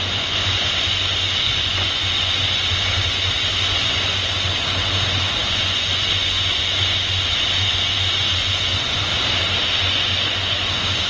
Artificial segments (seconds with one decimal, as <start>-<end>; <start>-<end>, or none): 0.0-9.1; 9.7-11.1